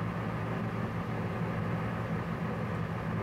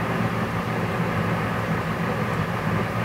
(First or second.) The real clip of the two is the first